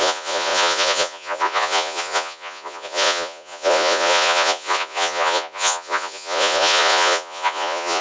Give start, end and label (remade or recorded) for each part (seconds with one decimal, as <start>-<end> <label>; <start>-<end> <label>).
0.0-8.0 remade